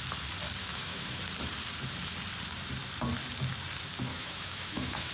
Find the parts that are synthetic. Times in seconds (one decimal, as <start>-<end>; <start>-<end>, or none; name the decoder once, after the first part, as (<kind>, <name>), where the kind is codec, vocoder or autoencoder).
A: 0.6-1.2 (autoencoder, DAC-VAE); 4.1-5.1